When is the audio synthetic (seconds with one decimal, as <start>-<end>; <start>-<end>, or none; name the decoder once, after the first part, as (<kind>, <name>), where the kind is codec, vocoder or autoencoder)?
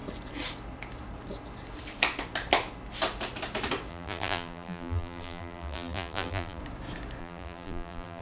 3.9-6.6 (vocoder, BigVGAN v2); 7.2-8.2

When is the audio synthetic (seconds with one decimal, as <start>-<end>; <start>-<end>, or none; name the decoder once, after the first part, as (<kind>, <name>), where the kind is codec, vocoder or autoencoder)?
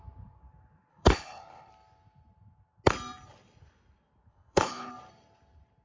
0.9-1.7 (codec, HILCodec); 4.3-4.9